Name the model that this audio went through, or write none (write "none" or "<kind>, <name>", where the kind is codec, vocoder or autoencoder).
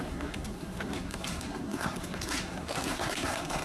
codec, SNAC